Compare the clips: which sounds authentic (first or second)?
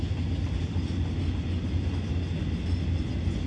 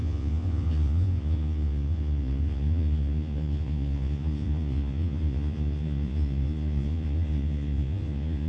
first